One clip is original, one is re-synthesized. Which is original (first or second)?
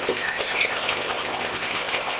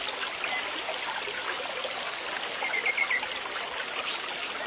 second